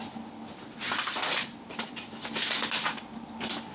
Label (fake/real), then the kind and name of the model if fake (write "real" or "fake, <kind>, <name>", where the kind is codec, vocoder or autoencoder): real